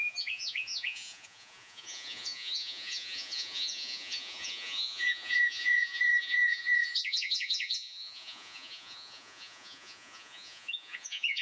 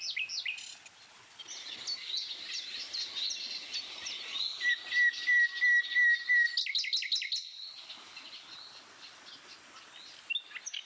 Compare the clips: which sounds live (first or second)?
second